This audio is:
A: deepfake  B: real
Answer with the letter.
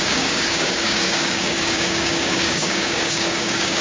A